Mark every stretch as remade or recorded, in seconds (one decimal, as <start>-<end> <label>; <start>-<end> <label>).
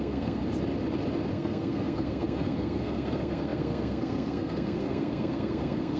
0.0-0.4 remade; 0.4-1.3 recorded; 1.3-6.0 remade